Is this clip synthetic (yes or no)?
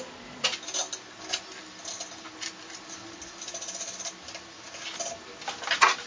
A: no